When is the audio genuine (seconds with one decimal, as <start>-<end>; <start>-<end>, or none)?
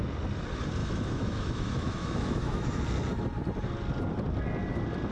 0.0-0.8; 2.8-5.1